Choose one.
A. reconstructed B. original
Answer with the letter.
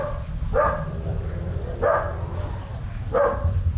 B